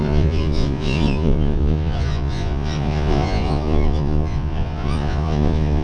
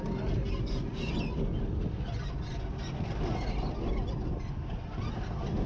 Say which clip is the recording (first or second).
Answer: second